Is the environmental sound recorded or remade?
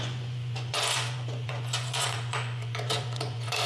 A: remade